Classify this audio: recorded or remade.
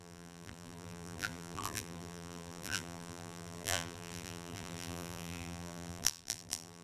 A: remade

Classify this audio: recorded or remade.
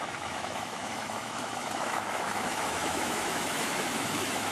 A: remade